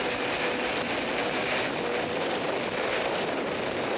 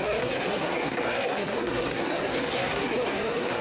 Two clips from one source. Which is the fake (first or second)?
second